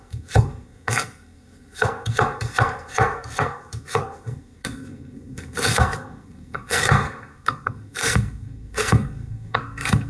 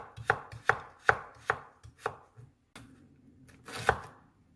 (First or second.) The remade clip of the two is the first